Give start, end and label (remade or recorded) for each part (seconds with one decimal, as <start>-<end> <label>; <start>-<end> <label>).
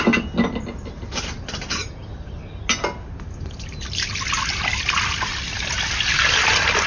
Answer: 0.0-6.9 recorded